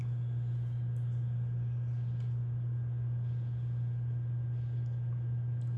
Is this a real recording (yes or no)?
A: yes